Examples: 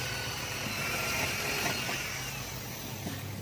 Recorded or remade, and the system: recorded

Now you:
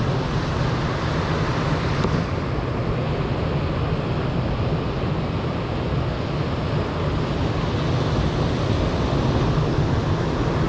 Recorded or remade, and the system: recorded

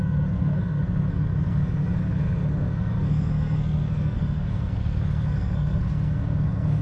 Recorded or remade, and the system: remade, codec, SNAC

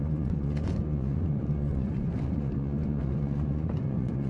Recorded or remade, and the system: remade, vocoder, Vocos